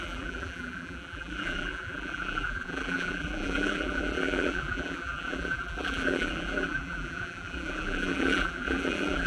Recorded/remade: remade